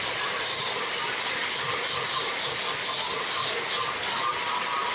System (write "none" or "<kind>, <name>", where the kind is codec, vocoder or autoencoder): none